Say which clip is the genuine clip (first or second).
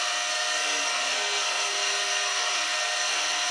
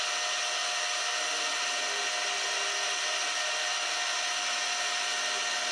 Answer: second